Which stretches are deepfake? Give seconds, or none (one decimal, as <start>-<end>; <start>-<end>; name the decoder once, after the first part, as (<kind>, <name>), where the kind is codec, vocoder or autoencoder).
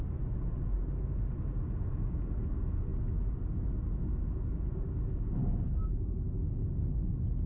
none